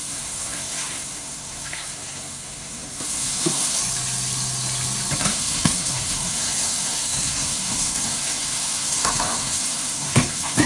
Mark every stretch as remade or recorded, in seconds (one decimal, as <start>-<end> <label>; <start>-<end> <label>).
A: 0.0-3.8 remade; 3.8-5.2 recorded; 5.2-10.7 remade